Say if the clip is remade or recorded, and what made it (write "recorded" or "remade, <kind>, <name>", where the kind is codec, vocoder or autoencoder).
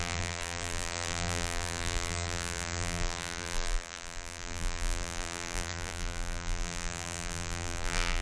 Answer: remade, vocoder, BigVGAN v2